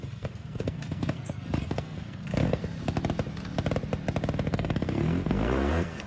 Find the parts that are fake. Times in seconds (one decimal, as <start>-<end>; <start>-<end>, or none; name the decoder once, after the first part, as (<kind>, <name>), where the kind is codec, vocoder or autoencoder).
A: 0.0-2.6 (codec, SNAC); 4.5-6.1